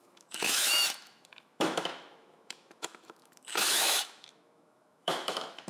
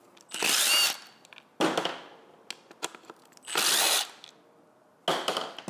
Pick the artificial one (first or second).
first